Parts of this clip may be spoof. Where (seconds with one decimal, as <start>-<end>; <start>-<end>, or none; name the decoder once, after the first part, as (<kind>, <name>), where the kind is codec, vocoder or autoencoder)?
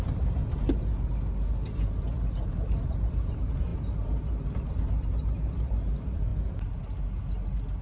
0.0-0.4 (vocoder, BigVGAN v2); 1.8-6.3